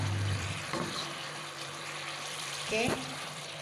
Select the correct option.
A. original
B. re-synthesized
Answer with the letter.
B